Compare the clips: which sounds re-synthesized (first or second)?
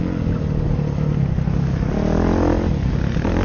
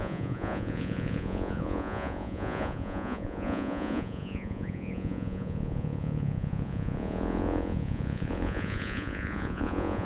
second